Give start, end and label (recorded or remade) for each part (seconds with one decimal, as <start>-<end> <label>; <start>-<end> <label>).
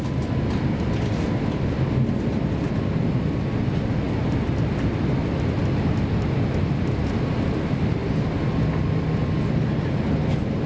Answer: 0.0-10.7 recorded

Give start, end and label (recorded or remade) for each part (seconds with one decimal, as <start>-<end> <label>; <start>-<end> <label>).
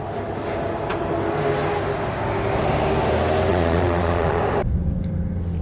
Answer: 0.0-3.5 recorded; 3.5-4.4 remade; 4.4-5.6 recorded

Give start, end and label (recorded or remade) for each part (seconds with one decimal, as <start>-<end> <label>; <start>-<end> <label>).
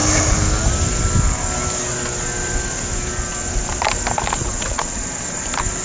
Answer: 0.0-4.4 recorded; 4.4-5.0 remade; 5.0-5.8 recorded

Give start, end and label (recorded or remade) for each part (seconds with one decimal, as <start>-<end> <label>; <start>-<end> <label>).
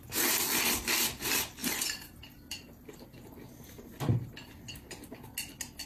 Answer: 0.0-5.9 recorded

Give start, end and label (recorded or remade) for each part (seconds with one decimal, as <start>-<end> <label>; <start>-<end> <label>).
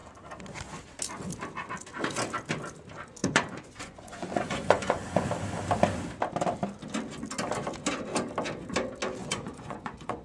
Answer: 0.0-3.2 recorded; 3.2-5.3 remade; 5.3-9.2 recorded; 9.2-10.2 remade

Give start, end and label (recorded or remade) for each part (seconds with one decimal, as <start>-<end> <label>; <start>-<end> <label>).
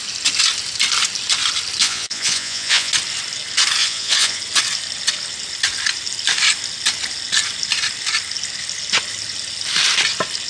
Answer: 0.0-1.8 recorded; 1.8-2.9 remade; 2.9-3.8 recorded; 3.8-4.4 remade; 4.4-10.5 recorded